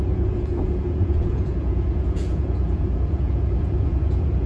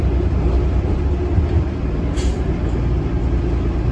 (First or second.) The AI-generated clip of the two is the first